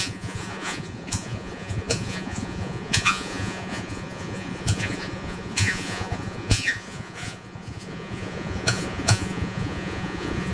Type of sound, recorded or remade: remade